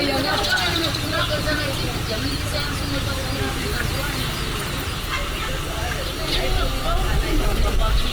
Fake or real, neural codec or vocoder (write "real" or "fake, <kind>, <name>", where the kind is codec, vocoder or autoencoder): real